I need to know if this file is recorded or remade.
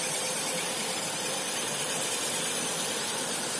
recorded